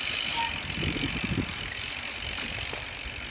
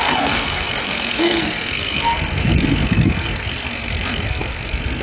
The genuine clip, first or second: first